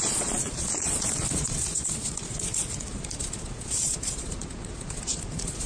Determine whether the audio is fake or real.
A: fake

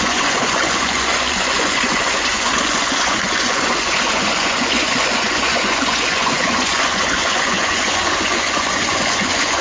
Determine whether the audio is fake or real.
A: fake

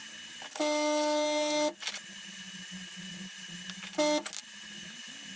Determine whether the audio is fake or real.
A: real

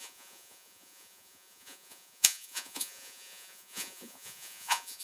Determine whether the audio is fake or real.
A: fake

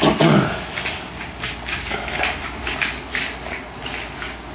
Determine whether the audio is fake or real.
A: real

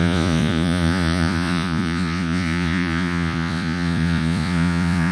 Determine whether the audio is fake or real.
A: fake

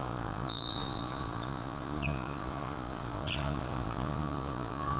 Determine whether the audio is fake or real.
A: fake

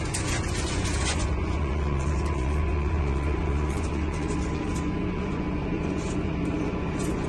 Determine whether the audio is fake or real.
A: fake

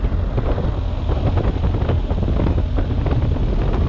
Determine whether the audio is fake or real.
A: real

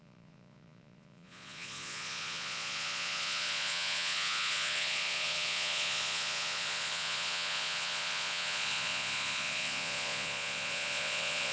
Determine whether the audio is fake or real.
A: fake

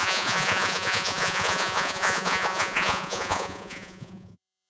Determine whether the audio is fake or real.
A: fake